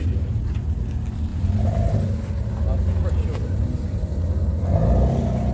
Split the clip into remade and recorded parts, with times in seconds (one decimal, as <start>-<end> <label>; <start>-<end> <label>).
0.0-5.5 recorded

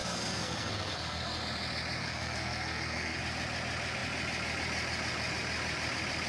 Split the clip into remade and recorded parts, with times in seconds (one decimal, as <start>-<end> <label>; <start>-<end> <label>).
0.0-1.4 remade; 1.4-2.0 recorded; 2.0-3.2 remade; 3.2-6.3 recorded

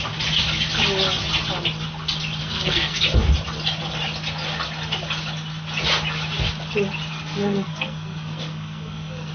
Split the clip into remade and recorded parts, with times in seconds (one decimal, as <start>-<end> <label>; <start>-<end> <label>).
0.0-2.4 recorded; 2.4-3.0 remade; 3.0-7.1 recorded; 7.1-9.3 remade

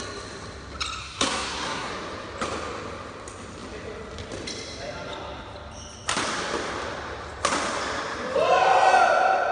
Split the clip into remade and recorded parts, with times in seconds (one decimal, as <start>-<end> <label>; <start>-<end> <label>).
0.0-1.0 recorded; 1.0-1.9 remade; 1.9-9.5 recorded

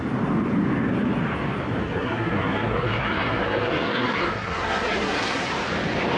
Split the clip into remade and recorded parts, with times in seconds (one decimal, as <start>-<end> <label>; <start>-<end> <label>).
0.0-1.8 recorded; 1.8-5.5 remade; 5.5-6.2 recorded

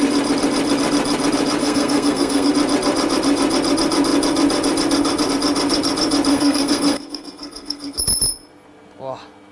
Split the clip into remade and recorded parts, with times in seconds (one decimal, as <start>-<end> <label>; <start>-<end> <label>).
0.0-1.6 recorded; 1.6-2.5 remade; 2.5-6.3 recorded; 6.3-8.0 remade; 8.0-9.5 recorded

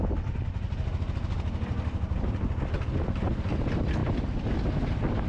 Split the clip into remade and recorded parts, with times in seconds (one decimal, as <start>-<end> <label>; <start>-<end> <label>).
0.0-5.3 recorded